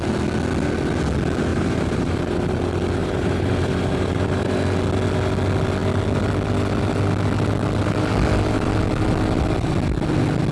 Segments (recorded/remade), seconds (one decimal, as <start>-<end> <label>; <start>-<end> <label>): 0.0-1.5 recorded; 1.5-2.6 remade; 2.6-3.0 recorded; 3.0-4.6 remade; 4.6-10.5 recorded